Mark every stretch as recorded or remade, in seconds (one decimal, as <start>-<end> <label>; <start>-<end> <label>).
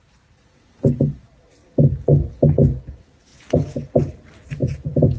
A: 0.0-3.3 recorded; 3.3-3.9 remade; 3.9-4.6 recorded; 4.6-5.2 remade